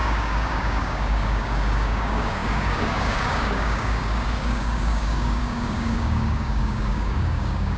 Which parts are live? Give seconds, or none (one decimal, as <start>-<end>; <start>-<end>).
none